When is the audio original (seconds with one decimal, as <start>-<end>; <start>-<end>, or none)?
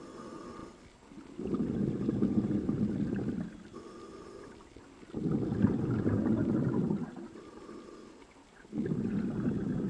0.0-9.9